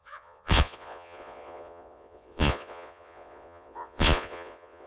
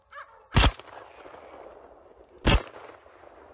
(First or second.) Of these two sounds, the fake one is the first